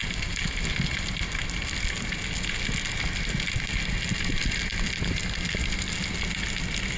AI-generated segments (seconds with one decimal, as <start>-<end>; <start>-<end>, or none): none